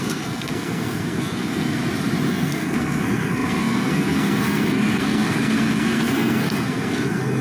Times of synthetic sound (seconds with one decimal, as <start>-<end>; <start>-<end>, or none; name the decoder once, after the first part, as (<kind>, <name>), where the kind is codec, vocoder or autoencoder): 0.0-1.8 (codec, SNAC); 2.3-7.4